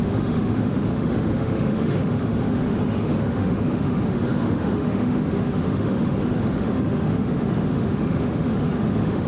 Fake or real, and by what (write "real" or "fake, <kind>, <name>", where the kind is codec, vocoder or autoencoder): fake, autoencoder, DAC-VAE